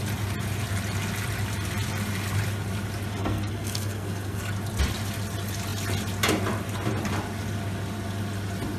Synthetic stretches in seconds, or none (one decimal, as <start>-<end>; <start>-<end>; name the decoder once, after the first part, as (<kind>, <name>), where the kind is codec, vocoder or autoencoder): 3.2-4.5 (codec, SNAC)